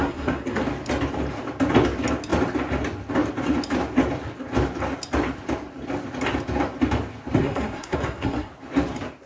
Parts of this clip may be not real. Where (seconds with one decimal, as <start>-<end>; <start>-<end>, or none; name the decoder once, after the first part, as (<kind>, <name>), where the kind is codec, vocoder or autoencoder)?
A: 0.0-0.6 (codec, SNAC); 7.4-8.5